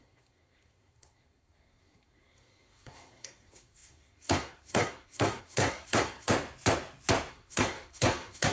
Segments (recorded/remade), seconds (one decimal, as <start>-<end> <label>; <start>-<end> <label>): 0.0-6.3 remade; 6.3-7.3 recorded; 7.3-8.5 remade